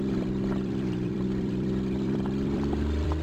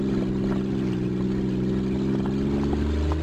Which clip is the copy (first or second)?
first